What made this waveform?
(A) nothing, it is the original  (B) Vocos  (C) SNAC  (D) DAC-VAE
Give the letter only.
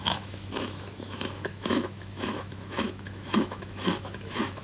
D